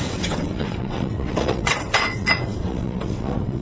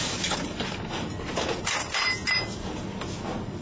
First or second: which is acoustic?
second